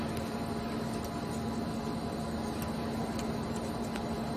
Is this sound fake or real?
real